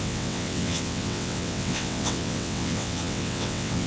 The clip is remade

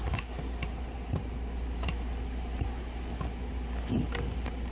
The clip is recorded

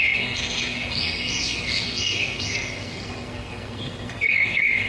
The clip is remade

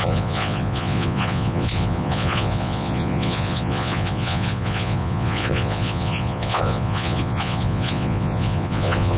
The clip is remade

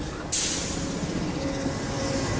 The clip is recorded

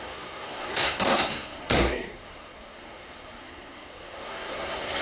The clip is remade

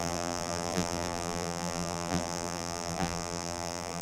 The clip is remade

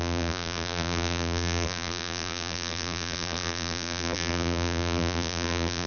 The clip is remade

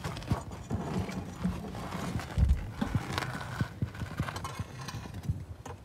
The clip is recorded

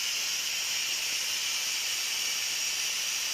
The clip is remade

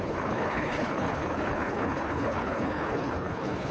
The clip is remade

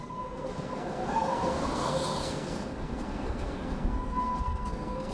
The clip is remade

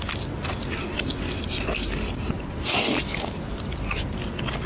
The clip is recorded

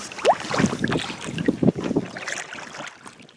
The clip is recorded